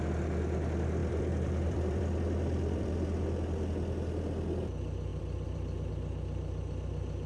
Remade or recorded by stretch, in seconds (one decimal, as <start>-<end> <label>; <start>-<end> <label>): 0.0-1.0 recorded; 1.0-2.9 remade; 2.9-5.1 recorded; 5.1-5.9 remade; 5.9-7.3 recorded